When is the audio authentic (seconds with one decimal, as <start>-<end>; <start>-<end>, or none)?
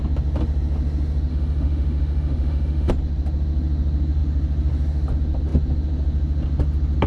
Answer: 0.0-1.3; 2.9-7.1